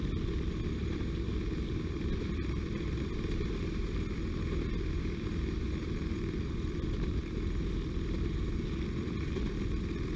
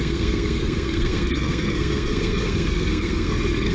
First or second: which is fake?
second